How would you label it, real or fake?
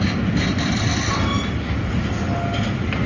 real